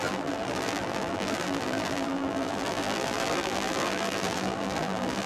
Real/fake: fake